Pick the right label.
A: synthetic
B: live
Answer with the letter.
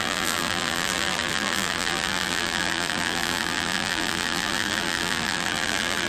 A